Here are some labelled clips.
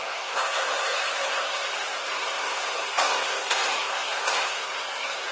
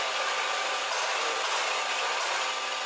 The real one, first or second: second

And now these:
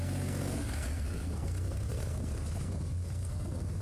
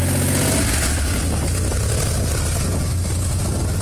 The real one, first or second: second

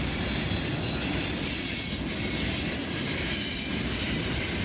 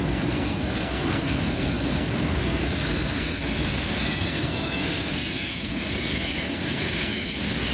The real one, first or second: first